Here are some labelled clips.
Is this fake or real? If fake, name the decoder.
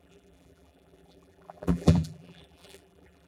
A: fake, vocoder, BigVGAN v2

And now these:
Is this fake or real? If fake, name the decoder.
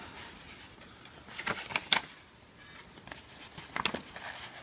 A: real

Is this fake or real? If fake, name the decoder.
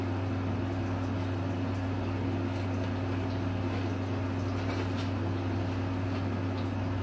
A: real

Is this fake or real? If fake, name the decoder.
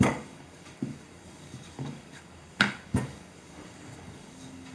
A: fake, codec, DAC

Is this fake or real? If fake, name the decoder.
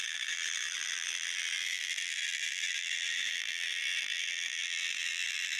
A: fake, vocoder, BigVGAN v2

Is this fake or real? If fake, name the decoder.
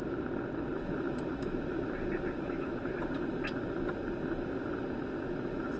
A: real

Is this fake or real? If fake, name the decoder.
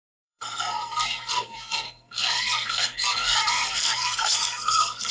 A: fake, codec, SNAC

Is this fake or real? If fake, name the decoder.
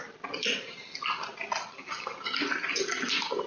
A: real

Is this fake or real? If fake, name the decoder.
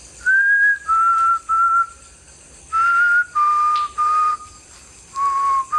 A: real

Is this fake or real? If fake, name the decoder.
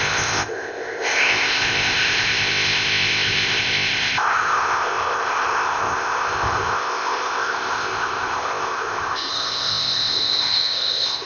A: fake, codec, ZipCodec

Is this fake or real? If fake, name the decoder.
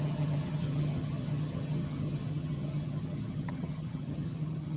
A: fake, vocoder, HiFi-GAN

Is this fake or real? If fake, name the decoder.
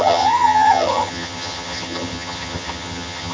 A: fake, vocoder, HiFi-GAN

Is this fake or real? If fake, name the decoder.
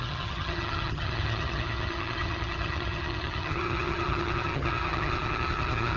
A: fake, vocoder, HiFi-GAN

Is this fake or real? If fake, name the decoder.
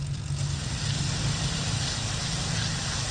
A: real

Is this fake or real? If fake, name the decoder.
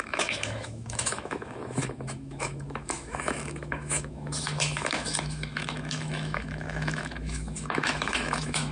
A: fake, autoencoder, DAC-VAE